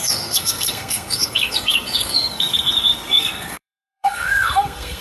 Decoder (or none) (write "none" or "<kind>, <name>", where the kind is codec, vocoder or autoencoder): codec, SNAC